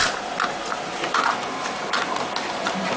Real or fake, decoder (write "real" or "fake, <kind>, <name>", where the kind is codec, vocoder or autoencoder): real